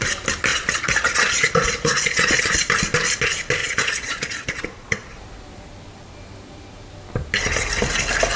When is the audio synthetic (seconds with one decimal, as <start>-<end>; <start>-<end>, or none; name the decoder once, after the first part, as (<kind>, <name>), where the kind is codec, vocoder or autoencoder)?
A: 0.5-2.4 (vocoder, Vocos); 3.6-5.2